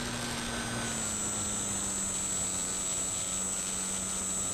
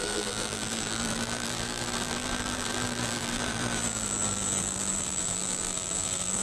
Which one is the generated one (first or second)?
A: second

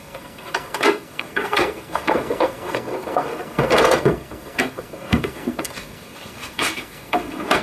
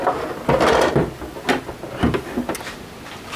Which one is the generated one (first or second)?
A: first